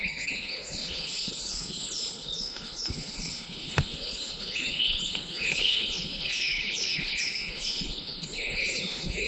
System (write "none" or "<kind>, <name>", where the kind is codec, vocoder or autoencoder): codec, HILCodec